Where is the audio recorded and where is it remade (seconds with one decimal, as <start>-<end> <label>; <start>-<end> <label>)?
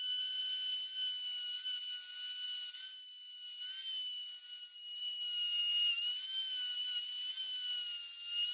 0.0-8.5 recorded